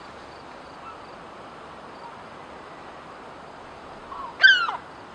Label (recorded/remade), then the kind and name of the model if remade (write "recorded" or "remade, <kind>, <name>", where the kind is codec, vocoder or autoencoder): recorded